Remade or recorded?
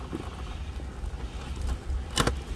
recorded